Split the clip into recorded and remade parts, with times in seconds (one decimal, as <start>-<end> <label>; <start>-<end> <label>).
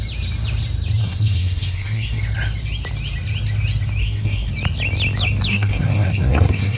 0.0-1.0 recorded; 1.0-2.2 remade; 2.2-4.0 recorded; 4.0-4.5 remade; 4.5-5.5 recorded; 5.5-6.8 remade